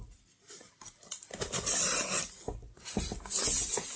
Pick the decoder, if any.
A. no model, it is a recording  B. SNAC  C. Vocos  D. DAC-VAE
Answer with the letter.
A